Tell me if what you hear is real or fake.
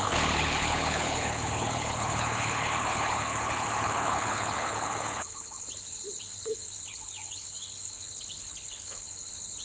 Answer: fake